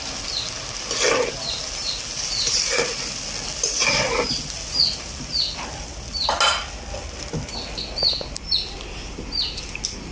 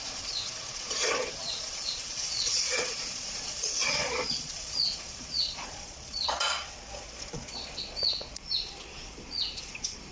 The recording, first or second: first